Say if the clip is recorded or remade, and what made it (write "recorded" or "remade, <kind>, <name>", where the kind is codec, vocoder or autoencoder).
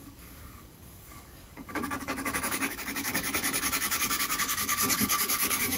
remade, codec, DAC